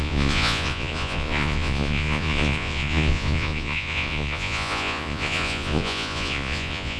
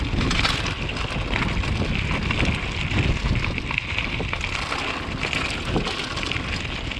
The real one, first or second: second